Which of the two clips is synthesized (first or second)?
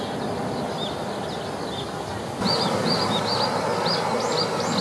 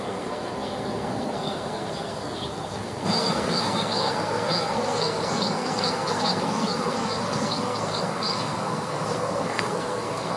second